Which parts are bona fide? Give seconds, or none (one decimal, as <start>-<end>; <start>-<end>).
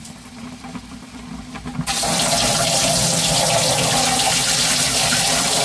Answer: 1.7-5.1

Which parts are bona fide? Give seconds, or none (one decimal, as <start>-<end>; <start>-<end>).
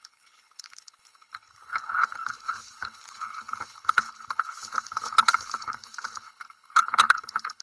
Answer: none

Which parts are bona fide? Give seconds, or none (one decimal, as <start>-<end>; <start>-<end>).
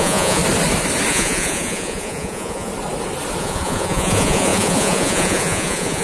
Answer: 0.4-1.1; 2.7-3.4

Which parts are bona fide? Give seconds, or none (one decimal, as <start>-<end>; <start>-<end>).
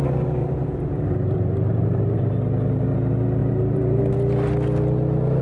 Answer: 0.0-0.4; 2.3-3.4; 4.0-5.4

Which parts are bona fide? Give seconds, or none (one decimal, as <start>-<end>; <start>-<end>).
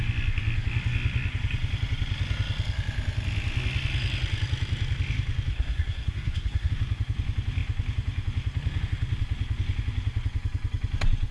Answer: 0.0-5.5; 6.7-11.3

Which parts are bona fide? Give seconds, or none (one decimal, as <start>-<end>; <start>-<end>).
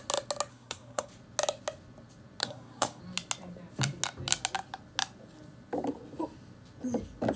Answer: 0.0-0.5; 1.1-2.4; 3.0-7.4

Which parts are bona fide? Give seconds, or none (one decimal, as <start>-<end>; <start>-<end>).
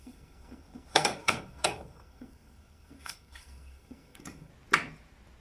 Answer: 4.5-5.4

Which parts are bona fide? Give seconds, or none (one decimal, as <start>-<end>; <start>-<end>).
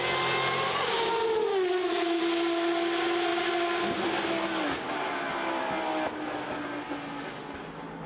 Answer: 0.0-1.5; 2.2-8.1